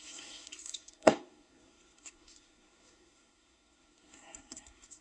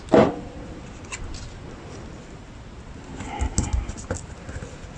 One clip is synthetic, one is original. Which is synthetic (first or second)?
first